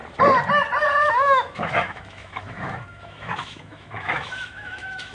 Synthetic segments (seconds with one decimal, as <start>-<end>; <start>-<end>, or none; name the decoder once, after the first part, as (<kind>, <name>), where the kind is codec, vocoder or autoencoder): 1.1-5.1 (autoencoder, DAC-VAE)

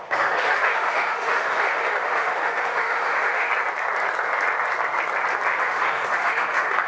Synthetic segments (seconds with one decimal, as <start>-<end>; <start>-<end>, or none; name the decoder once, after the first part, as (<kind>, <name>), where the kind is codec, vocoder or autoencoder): 0.0-3.5 (autoencoder, DAC-VAE); 5.6-6.9